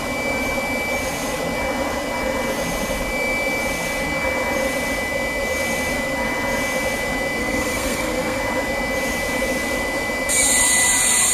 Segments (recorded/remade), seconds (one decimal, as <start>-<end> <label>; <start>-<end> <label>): 0.0-7.4 recorded; 7.4-8.4 remade; 8.4-11.3 recorded